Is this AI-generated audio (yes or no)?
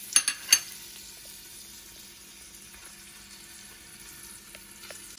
no